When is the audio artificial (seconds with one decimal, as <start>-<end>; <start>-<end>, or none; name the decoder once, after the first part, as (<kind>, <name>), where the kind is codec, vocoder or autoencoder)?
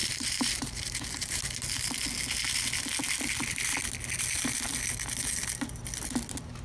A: 0.0-1.4 (vocoder, BigVGAN v2)